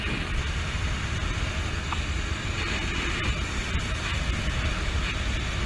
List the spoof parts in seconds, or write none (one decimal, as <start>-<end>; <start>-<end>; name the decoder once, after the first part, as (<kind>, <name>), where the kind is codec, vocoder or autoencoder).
none